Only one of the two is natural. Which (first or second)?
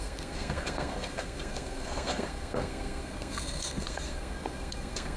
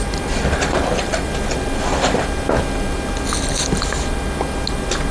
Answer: second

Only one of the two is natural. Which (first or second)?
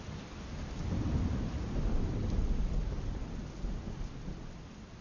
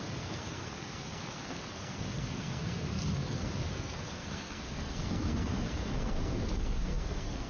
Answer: first